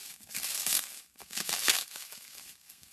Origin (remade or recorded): remade